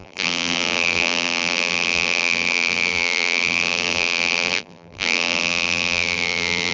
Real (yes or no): no